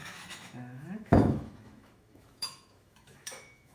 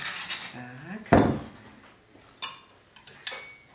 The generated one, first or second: first